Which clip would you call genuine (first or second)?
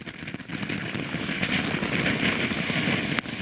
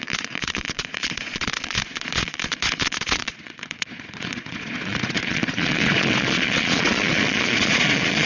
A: first